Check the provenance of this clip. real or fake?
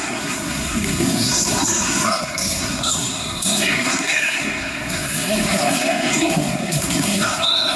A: fake